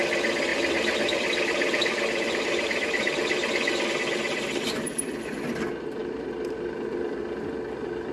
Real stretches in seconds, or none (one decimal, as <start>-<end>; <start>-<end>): 0.0-0.5; 3.9-8.1